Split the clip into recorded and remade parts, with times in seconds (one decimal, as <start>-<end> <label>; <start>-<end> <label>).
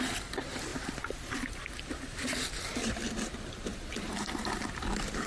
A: 0.0-5.3 recorded